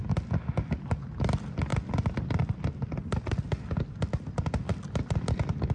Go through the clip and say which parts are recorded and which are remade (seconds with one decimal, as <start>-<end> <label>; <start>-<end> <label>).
0.0-5.7 recorded